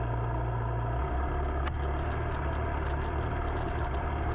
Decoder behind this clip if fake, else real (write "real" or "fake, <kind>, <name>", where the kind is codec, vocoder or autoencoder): real